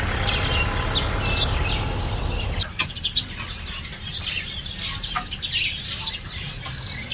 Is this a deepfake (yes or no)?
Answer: no